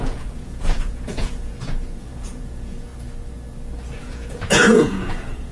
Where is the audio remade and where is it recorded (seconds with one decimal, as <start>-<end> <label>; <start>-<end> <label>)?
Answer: 0.0-2.9 remade; 2.9-4.0 recorded; 4.0-5.5 remade